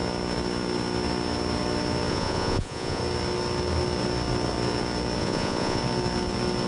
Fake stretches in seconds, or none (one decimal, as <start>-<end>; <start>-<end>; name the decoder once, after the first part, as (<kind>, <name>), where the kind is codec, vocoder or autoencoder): 2.1-3.0 (vocoder, Vocos); 5.2-5.8